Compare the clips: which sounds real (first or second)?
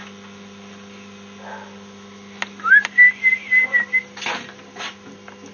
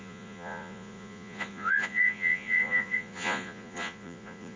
first